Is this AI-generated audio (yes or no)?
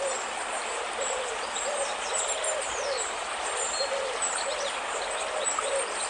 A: no